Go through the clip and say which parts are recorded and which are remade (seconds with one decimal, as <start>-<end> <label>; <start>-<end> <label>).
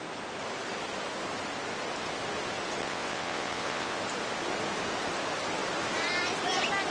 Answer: 0.0-2.8 recorded; 2.8-4.0 remade; 4.0-6.9 recorded